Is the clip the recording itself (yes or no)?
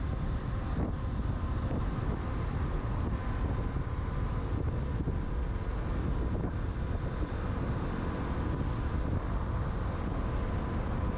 yes